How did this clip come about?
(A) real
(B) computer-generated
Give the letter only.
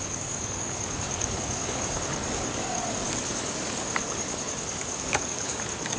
B